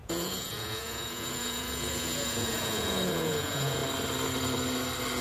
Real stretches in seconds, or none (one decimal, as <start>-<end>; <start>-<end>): 3.8-5.2